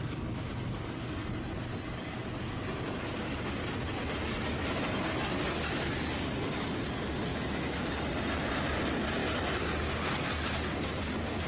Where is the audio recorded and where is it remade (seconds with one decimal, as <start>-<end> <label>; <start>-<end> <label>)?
0.0-7.3 recorded; 7.3-7.9 remade; 7.9-11.5 recorded